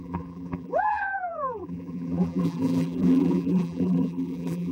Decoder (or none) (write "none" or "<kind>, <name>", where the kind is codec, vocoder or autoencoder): vocoder, BigVGAN v2